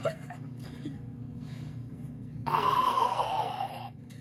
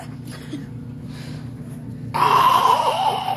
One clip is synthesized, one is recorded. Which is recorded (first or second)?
second